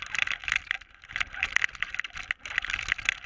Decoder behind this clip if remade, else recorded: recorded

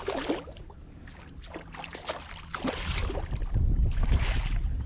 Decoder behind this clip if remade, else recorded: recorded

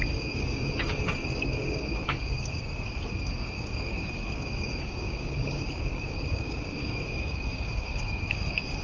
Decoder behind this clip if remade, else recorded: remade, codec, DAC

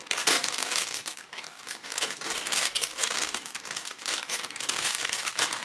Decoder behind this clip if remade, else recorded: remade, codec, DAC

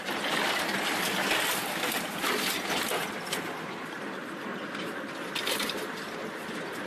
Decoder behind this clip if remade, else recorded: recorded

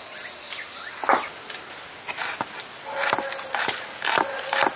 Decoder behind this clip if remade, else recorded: recorded